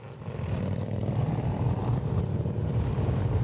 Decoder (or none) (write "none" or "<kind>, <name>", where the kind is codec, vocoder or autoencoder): vocoder, BigVGAN v2